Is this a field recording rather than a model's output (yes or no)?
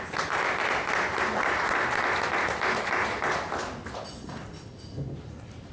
yes